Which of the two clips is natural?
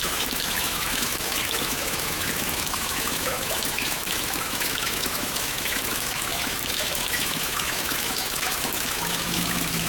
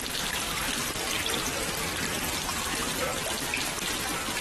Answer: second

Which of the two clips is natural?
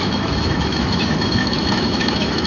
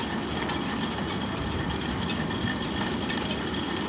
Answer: second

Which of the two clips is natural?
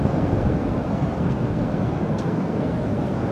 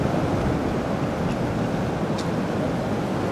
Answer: second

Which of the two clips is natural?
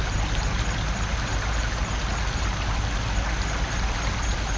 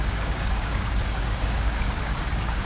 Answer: first